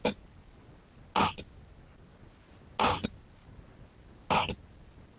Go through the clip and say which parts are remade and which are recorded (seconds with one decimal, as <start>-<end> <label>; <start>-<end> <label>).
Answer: 0.0-5.2 recorded